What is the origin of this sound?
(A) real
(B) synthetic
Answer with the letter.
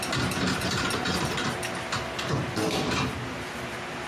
A